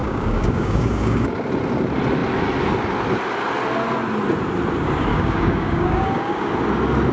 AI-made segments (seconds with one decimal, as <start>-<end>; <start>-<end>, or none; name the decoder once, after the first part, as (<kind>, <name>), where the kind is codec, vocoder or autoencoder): 0.0-1.3 (codec, DAC); 5.1-6.5